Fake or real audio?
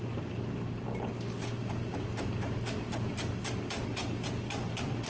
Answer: real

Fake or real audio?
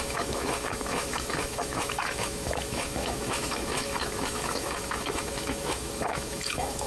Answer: fake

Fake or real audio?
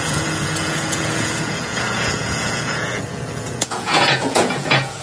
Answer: fake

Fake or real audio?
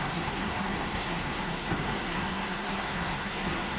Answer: fake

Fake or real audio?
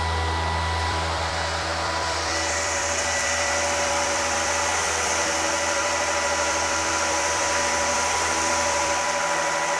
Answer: fake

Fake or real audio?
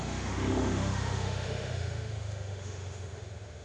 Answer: fake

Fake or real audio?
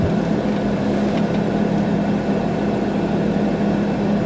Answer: real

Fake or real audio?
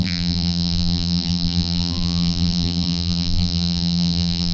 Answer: fake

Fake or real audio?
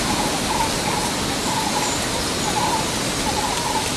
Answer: real